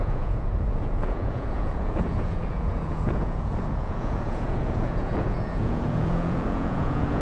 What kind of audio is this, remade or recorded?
remade